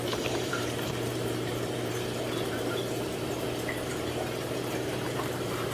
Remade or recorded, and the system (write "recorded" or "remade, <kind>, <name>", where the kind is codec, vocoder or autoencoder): remade, vocoder, BigVGAN v2